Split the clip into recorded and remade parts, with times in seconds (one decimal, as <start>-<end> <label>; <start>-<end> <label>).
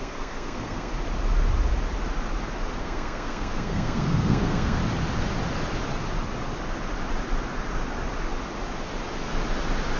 0.0-0.9 remade; 0.9-2.8 recorded; 2.8-4.8 remade; 4.8-10.0 recorded